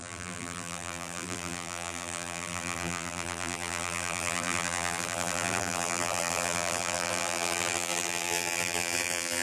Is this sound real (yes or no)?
no